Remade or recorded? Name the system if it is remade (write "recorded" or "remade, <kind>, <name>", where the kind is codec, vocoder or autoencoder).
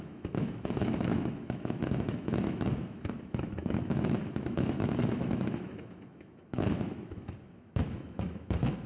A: remade, autoencoder, DAC-VAE